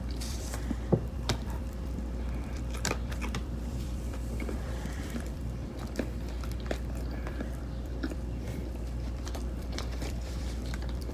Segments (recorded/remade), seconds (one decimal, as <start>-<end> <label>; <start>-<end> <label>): 0.0-5.4 remade; 5.4-7.3 recorded; 7.3-11.1 remade